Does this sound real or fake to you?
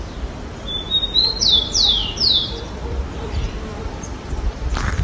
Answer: fake